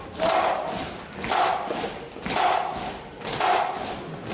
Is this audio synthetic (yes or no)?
no